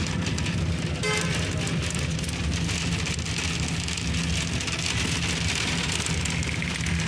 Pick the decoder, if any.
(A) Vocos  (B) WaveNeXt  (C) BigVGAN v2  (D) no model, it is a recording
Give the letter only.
D